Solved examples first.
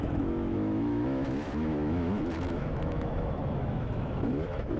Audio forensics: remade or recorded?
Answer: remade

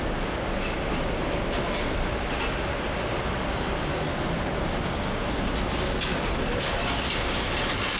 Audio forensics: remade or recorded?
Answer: recorded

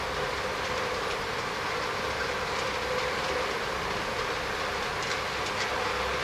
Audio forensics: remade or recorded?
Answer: recorded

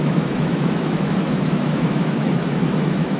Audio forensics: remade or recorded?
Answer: remade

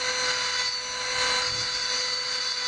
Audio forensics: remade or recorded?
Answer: recorded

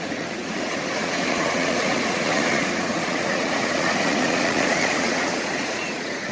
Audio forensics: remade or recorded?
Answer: remade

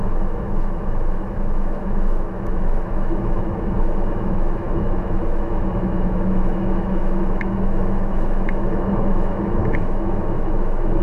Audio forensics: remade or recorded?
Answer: remade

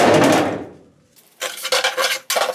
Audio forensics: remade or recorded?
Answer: recorded